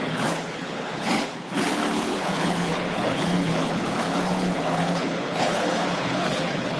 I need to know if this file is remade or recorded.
remade